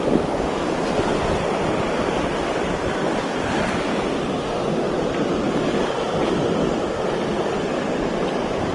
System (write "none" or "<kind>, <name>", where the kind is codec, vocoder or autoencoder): none